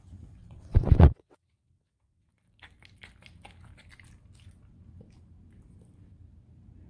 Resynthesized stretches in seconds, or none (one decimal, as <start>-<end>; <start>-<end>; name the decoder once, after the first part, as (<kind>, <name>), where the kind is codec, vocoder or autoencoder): 0.4-2.3 (vocoder, WaveNeXt)